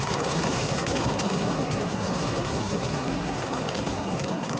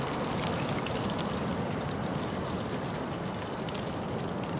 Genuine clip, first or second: second